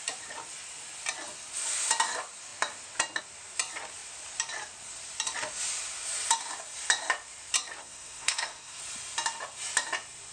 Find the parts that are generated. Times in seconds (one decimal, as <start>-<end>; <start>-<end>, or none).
7.8-8.8